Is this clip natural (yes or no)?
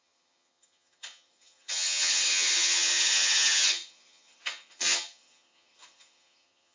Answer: no